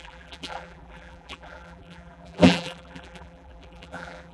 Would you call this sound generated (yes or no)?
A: yes